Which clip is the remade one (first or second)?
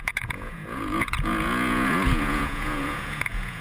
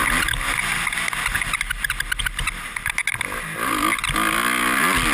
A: first